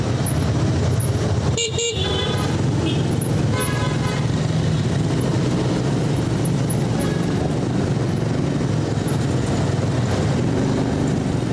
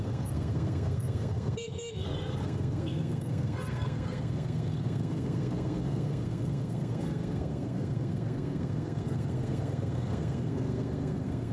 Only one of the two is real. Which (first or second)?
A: first